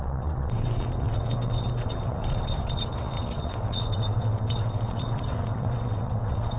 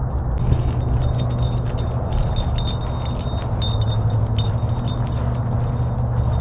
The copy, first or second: first